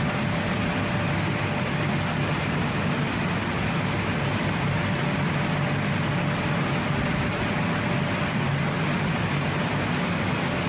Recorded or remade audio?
recorded